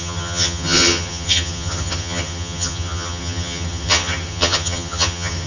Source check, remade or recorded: remade